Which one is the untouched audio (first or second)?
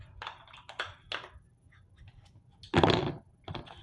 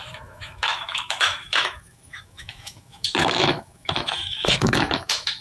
first